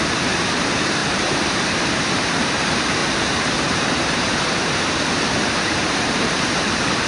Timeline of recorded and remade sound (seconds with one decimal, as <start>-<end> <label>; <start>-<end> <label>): 0.0-3.0 remade; 3.0-3.6 recorded; 3.6-7.1 remade